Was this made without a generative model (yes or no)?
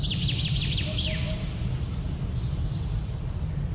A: yes